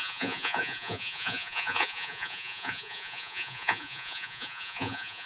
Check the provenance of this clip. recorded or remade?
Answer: remade